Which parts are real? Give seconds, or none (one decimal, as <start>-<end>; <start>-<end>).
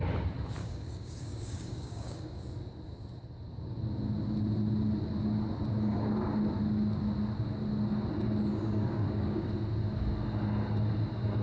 0.0-0.6; 2.4-8.5; 9.5-11.4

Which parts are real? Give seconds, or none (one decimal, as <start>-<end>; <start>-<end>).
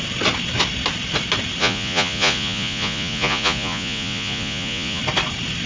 0.0-1.6; 5.0-5.7